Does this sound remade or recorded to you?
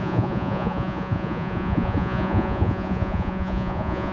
remade